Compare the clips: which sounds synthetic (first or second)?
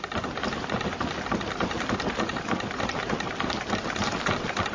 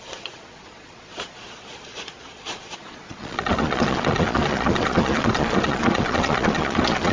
second